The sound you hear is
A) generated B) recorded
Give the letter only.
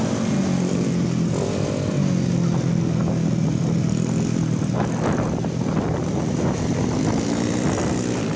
B